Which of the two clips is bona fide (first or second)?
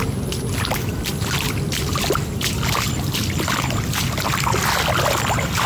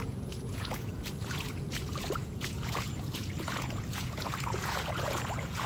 first